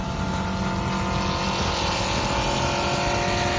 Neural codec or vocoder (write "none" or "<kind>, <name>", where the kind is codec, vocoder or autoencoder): none